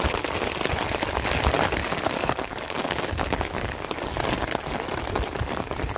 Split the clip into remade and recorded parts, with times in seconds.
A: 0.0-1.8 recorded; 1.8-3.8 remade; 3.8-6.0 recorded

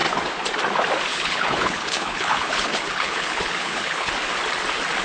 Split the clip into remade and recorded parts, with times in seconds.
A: 0.0-1.1 recorded; 1.1-4.1 remade; 4.1-5.0 recorded

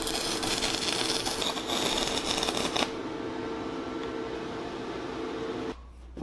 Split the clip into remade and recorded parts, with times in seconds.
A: 0.0-6.2 recorded

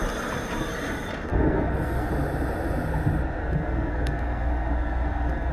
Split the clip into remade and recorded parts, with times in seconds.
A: 0.0-1.3 recorded; 1.3-2.1 remade; 2.1-3.4 recorded; 3.4-5.5 remade

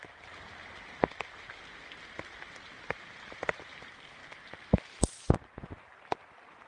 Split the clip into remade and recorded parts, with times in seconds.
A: 0.0-6.7 recorded

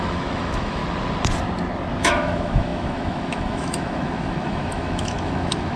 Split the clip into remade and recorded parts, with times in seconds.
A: 0.0-0.8 remade; 0.8-2.0 recorded; 2.0-5.8 remade